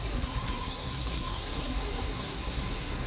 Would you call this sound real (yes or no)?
no